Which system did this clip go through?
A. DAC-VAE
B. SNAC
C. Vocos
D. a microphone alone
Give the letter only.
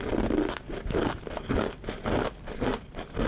D